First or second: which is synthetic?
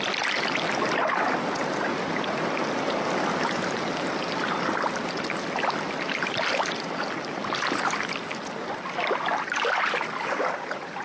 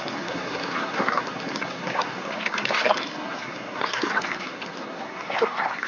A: second